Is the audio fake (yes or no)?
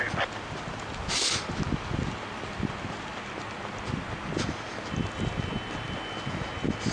no